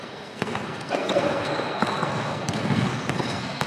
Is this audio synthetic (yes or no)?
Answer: yes